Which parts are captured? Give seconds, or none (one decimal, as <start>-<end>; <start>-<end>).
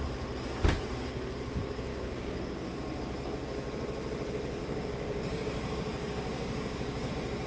0.0-1.9; 2.7-4.6; 7.1-7.5